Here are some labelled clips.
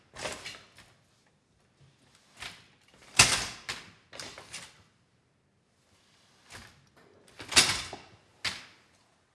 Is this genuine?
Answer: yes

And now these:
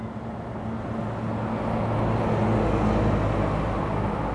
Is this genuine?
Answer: yes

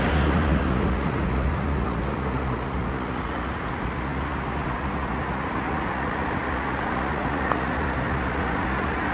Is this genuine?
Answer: no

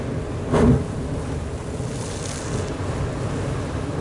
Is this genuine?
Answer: yes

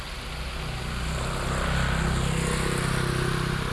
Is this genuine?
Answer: yes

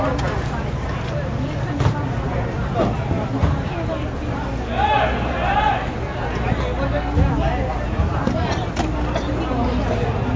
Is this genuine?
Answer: yes